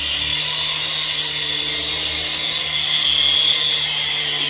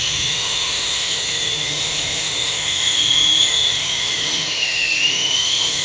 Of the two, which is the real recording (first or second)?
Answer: first